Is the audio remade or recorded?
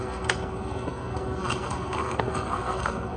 remade